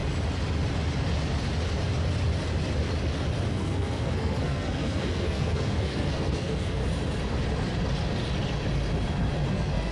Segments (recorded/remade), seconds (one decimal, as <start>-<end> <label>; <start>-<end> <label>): 0.0-3.5 recorded; 3.5-6.8 remade; 6.8-9.5 recorded; 9.5-9.9 remade